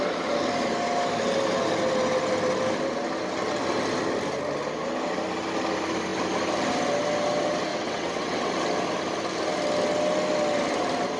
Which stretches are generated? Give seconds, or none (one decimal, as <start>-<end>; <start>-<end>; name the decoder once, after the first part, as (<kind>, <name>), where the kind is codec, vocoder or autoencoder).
7.7-8.5 (vocoder, WaveNeXt)